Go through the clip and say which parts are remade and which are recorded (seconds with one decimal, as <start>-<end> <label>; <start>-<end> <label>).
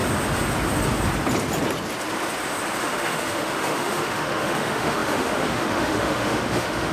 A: 0.0-2.8 recorded; 2.8-6.9 remade